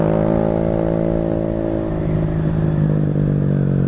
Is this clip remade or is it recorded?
recorded